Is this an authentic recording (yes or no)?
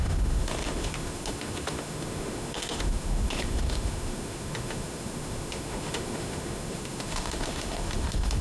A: no